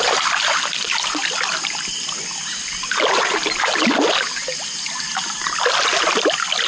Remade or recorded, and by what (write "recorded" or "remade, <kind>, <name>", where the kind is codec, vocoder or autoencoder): recorded